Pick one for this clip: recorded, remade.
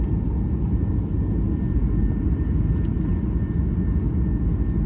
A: recorded